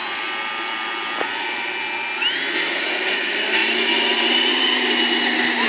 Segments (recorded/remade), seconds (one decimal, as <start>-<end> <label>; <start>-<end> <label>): 0.0-5.7 recorded